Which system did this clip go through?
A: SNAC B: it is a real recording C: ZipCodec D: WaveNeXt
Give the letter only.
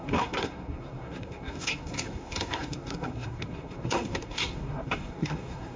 A